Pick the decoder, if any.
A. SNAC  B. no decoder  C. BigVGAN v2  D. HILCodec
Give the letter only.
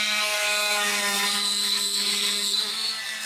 A